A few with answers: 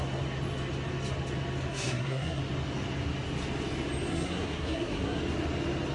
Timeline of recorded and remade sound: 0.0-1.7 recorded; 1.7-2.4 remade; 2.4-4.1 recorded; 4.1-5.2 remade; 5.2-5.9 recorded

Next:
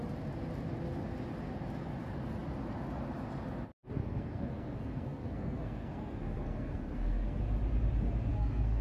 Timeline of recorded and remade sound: 0.0-4.0 recorded; 4.0-7.4 remade; 7.4-8.3 recorded; 8.3-8.8 remade

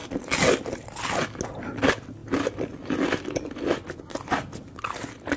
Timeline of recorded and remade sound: 0.0-5.4 recorded

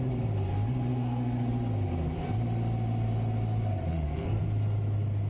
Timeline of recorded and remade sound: 0.0-0.9 recorded; 0.9-1.5 remade; 1.5-3.9 recorded; 3.9-4.4 remade; 4.4-5.3 recorded

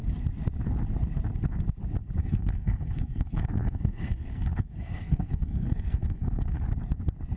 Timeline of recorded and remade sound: 0.0-2.2 recorded; 2.2-6.6 remade; 6.6-7.4 recorded

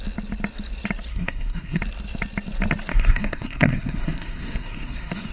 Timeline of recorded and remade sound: 0.0-1.1 recorded; 1.1-1.8 remade; 1.8-2.9 recorded; 2.9-5.3 remade

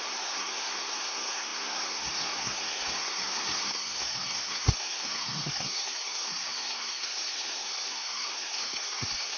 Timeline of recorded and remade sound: 0.0-9.4 remade